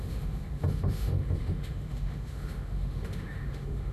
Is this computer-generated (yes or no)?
yes